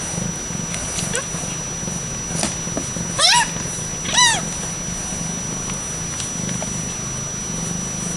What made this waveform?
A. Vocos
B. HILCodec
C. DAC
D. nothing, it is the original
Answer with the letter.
D